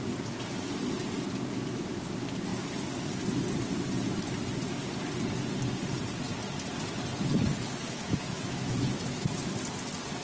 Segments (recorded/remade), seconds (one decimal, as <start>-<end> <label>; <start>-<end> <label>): 0.0-7.5 recorded; 7.5-9.5 remade; 9.5-10.2 recorded